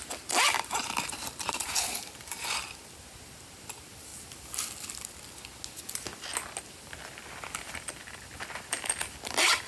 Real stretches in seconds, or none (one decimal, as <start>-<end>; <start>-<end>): 4.1-6.6